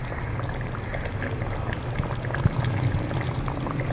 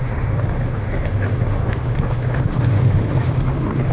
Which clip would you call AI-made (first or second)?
second